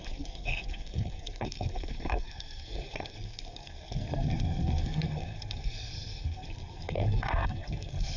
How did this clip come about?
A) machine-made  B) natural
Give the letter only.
A